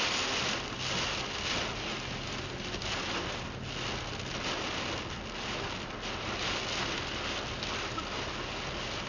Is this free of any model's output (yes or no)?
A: yes